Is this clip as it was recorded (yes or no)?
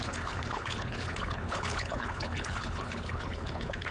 no